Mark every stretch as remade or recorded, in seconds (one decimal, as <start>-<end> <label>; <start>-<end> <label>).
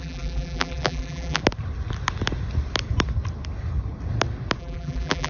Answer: 0.0-1.4 remade; 1.4-4.6 recorded; 4.6-5.3 remade